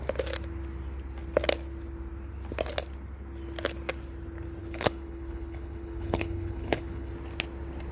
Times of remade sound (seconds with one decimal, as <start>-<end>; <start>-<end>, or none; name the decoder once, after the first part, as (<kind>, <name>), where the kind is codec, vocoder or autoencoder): 4.6-7.1 (codec, HILCodec)

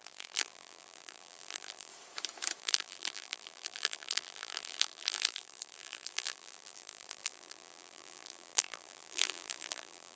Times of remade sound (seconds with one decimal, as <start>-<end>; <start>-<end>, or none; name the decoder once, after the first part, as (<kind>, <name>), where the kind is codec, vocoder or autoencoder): 0.0-1.9 (vocoder, BigVGAN v2); 2.6-10.2

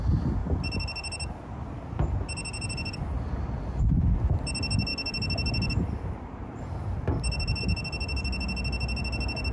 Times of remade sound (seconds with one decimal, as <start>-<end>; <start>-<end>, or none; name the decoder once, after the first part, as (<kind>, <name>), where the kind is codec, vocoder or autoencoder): 2.5-3.1 (vocoder, BigVGAN v2)

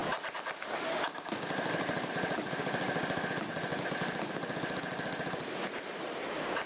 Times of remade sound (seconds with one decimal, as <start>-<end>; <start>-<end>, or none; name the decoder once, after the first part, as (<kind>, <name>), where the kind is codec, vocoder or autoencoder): 0.0-3.7 (vocoder, BigVGAN v2)

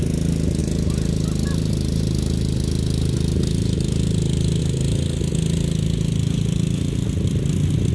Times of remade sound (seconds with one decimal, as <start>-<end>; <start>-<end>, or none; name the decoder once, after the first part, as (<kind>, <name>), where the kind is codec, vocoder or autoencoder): none

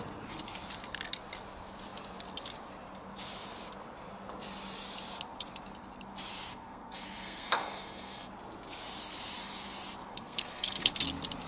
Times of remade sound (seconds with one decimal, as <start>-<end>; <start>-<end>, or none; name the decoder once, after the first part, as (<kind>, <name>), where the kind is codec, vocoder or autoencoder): 6.5-8.3 (codec, SNAC); 10.1-10.9